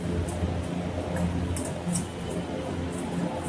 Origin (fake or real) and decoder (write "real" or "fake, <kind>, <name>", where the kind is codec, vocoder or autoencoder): real